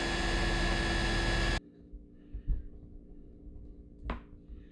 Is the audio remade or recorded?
recorded